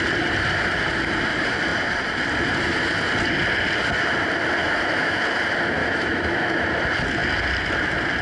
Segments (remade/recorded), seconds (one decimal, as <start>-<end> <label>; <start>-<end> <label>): 0.0-4.6 recorded; 4.6-5.2 remade; 5.2-5.8 recorded; 5.8-6.6 remade; 6.6-8.2 recorded